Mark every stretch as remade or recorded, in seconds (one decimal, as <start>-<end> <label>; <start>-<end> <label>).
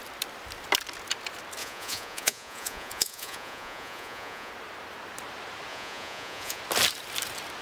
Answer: 0.0-1.6 recorded; 1.6-4.5 remade; 4.5-5.7 recorded; 5.7-6.6 remade; 6.6-7.6 recorded